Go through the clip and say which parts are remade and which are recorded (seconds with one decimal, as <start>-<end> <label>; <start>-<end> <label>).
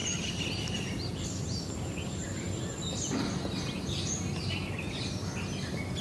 0.0-4.6 remade; 4.6-5.6 recorded; 5.6-6.0 remade